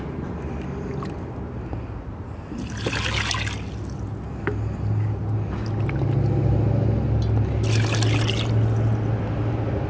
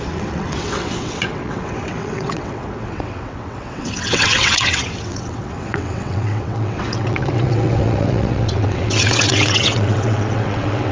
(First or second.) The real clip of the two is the first